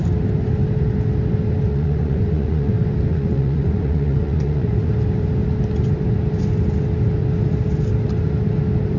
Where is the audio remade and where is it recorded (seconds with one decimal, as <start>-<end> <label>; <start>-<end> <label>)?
0.0-1.7 recorded; 1.7-2.7 remade; 2.7-3.1 recorded; 3.1-4.9 remade; 4.9-9.0 recorded